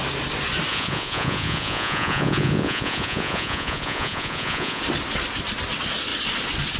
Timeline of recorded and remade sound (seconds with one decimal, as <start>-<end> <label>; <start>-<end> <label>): 0.0-0.7 recorded; 0.7-4.8 remade; 4.8-6.8 recorded